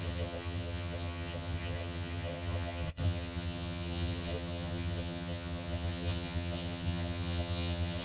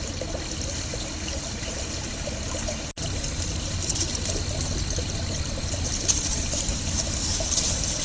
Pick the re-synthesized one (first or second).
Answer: first